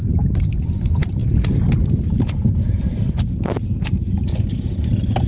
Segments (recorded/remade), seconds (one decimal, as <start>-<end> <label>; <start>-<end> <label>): 0.0-1.2 remade; 1.2-1.8 recorded; 1.8-5.3 remade